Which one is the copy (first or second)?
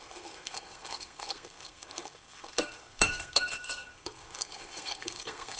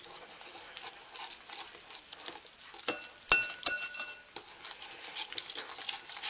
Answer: first